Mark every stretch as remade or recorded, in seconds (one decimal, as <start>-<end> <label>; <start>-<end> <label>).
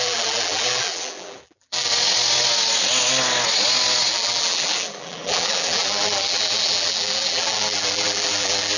0.0-1.9 remade; 1.9-4.1 recorded; 4.1-8.8 remade